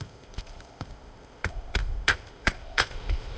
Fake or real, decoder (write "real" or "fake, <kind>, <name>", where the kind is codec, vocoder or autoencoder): fake, codec, ZipCodec